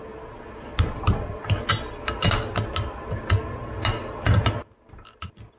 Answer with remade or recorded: recorded